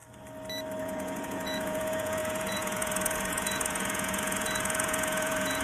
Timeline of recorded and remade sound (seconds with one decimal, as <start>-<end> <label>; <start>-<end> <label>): 0.0-0.8 recorded; 0.8-5.6 remade